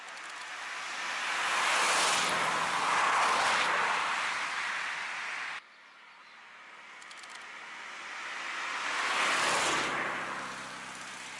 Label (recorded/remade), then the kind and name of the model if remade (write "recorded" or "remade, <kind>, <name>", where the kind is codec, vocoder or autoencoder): recorded